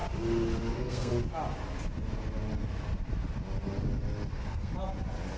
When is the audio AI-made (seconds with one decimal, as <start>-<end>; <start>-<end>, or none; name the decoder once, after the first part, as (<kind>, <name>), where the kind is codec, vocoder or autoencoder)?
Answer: 0.7-1.1 (codec, SNAC); 4.3-4.7